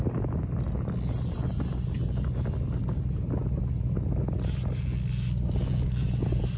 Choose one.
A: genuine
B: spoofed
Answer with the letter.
A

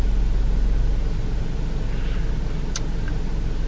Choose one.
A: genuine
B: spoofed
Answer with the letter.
A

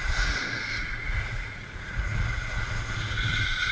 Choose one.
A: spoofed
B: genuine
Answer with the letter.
A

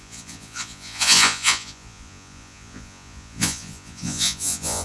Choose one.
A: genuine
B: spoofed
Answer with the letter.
B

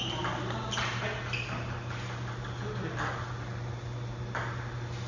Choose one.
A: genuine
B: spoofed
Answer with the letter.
A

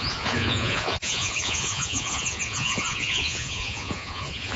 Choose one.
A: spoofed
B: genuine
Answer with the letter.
A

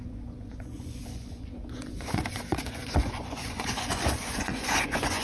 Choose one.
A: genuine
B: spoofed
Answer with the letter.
B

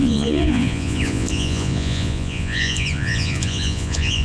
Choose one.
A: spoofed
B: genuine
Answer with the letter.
A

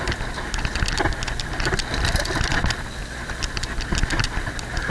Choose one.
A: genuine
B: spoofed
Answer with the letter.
A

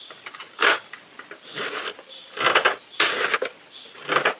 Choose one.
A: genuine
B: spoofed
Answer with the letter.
A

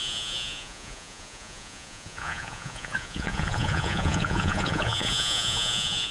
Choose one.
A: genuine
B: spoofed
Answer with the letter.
B